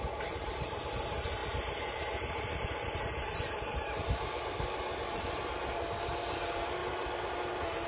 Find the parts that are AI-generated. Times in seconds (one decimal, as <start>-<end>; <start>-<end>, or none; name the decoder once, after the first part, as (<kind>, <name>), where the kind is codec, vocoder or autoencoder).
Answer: 6.8-7.5 (vocoder, BigVGAN v2)